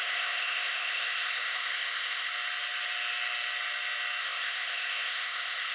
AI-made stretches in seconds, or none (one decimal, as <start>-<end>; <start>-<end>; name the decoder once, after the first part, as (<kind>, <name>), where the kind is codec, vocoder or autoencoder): 0.0-2.3 (codec, ZipCodec); 4.2-5.7